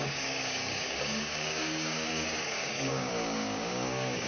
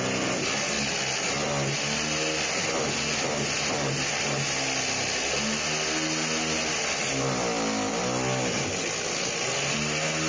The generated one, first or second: first